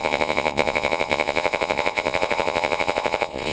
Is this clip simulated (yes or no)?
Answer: yes